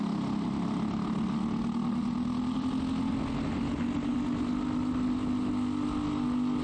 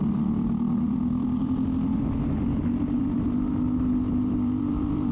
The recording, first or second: first